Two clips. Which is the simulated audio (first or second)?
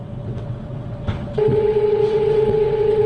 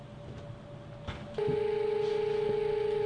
first